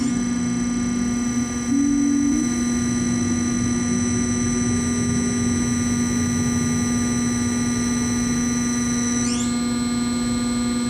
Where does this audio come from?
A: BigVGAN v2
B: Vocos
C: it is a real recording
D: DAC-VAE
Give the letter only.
C